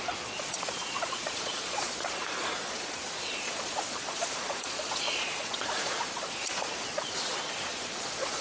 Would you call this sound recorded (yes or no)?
no